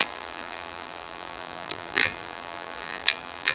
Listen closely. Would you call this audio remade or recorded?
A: remade